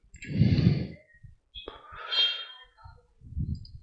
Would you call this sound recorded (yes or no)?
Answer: yes